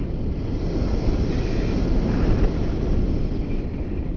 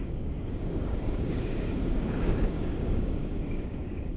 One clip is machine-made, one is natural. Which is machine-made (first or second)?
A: second